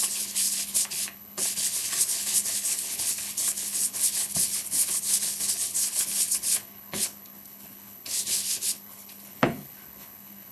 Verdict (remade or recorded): remade